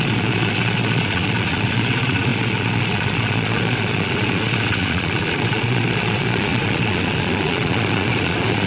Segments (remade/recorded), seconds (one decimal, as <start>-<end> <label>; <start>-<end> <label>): 0.0-8.7 remade